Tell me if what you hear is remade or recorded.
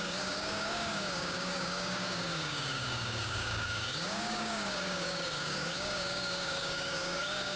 remade